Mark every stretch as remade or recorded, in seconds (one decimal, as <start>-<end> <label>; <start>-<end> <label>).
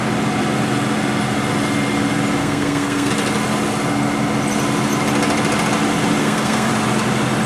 0.0-2.4 recorded; 2.4-3.1 remade; 3.1-6.2 recorded; 6.2-6.7 remade; 6.7-7.5 recorded